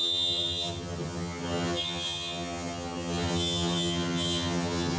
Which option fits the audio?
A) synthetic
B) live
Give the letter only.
A